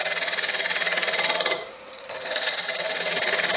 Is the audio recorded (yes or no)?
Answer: no